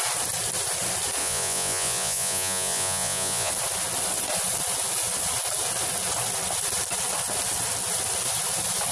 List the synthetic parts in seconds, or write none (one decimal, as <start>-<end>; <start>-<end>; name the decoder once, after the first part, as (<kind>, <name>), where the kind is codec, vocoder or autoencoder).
1.2-3.5 (vocoder, Vocos)